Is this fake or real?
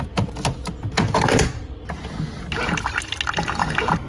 real